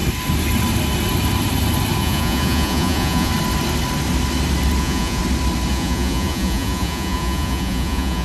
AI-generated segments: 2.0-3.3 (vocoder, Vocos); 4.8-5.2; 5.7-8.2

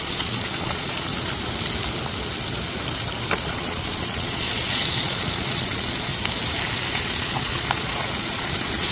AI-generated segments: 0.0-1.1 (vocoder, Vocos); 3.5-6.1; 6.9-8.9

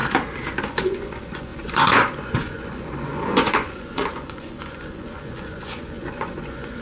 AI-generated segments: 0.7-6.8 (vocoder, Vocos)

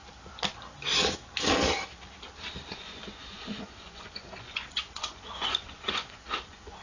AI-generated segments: 2.7-6.8 (vocoder, Vocos)

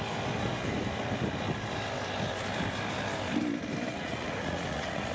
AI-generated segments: 3.9-5.1 (vocoder, Vocos)

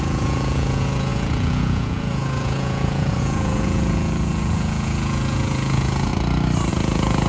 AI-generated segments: 0.0-6.1 (vocoder, Vocos); 6.7-7.3